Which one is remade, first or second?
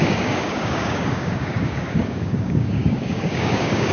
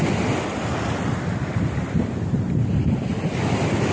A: first